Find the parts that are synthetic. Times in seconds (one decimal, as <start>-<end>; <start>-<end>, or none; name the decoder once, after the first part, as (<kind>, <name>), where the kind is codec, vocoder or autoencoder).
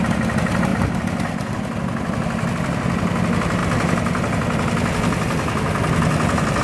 none